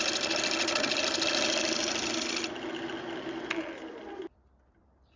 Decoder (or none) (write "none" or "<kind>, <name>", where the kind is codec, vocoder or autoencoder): none